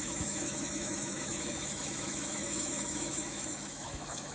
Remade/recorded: remade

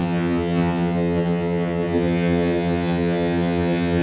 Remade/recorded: remade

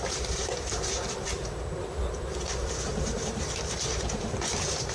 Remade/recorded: remade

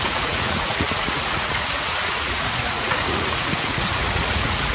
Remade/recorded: remade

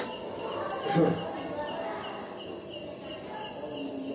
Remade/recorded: recorded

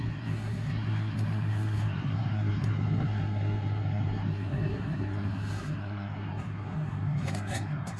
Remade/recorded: remade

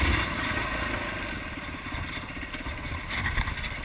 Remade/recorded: recorded